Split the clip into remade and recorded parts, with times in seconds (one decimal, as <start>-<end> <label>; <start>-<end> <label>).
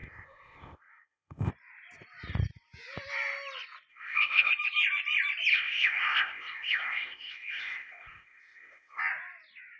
0.0-1.5 remade; 1.5-3.9 recorded; 3.9-4.5 remade; 4.5-5.5 recorded; 5.5-9.0 remade; 9.0-9.8 recorded